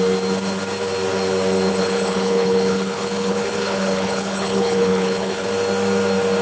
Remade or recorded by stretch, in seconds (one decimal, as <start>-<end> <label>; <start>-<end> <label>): 0.0-1.7 recorded; 1.7-5.5 remade; 5.5-6.4 recorded